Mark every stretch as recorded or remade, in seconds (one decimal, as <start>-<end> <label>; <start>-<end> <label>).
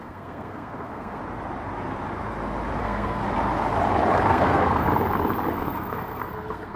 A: 0.0-1.2 remade; 1.2-2.8 recorded; 2.8-3.2 remade; 3.2-4.3 recorded; 4.3-4.9 remade; 4.9-5.5 recorded; 5.5-6.8 remade